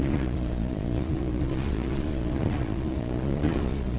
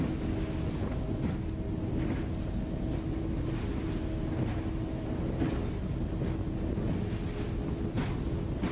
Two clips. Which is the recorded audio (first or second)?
second